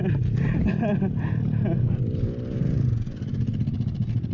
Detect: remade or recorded recorded